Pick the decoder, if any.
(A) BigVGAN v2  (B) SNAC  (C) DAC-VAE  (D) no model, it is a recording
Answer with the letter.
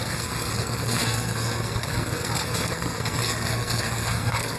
B